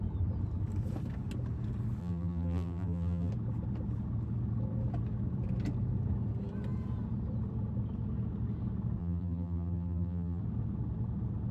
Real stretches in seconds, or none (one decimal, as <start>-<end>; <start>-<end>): 0.0-2.0; 3.3-9.0; 10.4-11.5